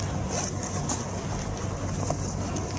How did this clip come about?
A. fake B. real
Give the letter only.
B